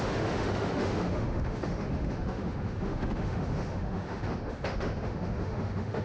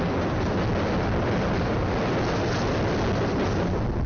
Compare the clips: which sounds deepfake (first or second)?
first